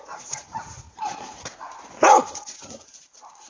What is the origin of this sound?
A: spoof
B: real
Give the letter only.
A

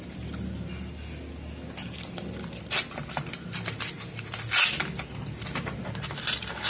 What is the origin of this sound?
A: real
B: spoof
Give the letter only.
A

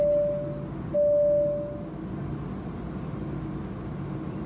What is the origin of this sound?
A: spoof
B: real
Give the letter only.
B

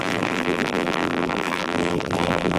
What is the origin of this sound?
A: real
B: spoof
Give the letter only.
B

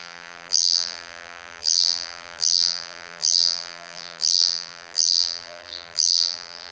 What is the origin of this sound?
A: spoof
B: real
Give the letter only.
A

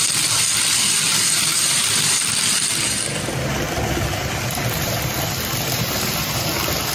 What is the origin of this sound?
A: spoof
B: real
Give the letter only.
B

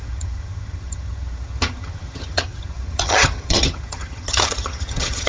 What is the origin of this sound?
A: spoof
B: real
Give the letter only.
A